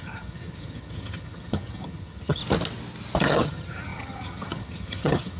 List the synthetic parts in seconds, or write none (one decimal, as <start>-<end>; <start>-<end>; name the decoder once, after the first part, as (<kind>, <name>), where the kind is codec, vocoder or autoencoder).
0.0-2.4 (vocoder, HiFi-GAN); 3.2-5.4